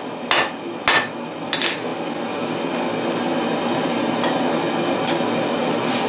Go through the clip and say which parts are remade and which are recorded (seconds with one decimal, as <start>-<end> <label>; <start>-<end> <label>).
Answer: 0.0-6.1 recorded